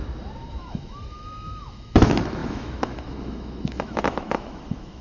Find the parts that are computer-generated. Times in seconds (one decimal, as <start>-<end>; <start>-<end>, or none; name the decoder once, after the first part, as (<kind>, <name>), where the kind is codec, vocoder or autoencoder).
0.5-5.0 (autoencoder, DAC-VAE)